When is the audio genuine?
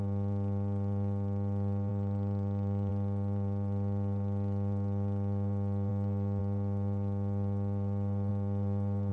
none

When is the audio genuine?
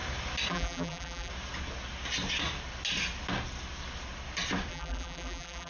0.0-0.5; 1.3-4.7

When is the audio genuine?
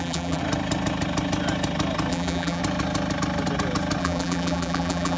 0.4-2.1; 2.6-4.0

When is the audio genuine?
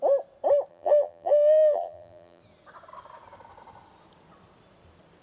0.0-0.7; 2.4-5.2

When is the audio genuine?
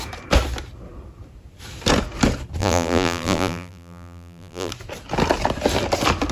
0.0-2.6; 4.7-6.3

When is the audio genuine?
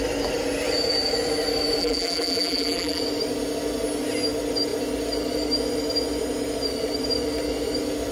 0.0-1.8; 3.0-8.1